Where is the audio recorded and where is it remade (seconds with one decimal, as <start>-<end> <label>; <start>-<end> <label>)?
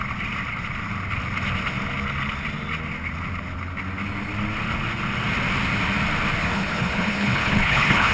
0.0-6.4 recorded; 6.4-8.1 remade